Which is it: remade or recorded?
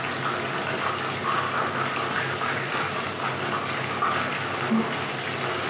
recorded